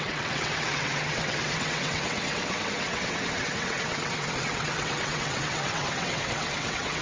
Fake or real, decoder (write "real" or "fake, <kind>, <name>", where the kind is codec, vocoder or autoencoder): fake, vocoder, WaveNeXt